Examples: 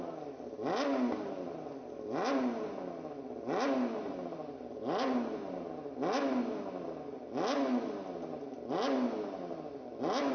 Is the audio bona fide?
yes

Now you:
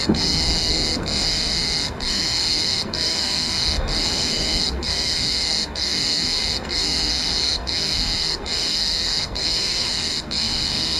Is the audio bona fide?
no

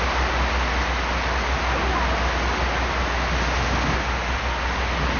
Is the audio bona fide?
yes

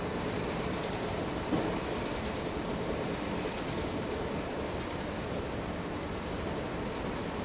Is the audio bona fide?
yes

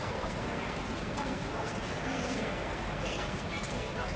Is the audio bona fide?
no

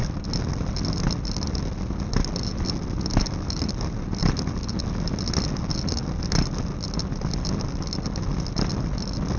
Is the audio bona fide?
yes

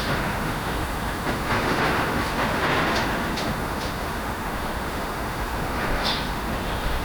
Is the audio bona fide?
no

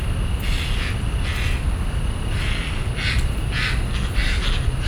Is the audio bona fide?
yes